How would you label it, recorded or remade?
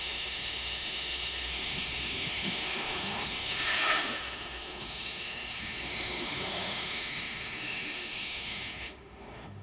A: remade